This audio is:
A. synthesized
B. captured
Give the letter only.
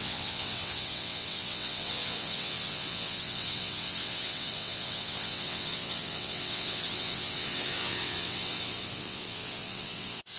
A